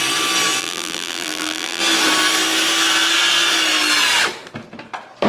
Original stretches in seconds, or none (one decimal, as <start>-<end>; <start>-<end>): 0.0-0.6; 1.8-5.3